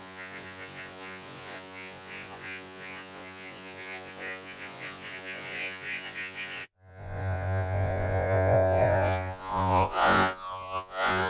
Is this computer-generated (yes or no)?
yes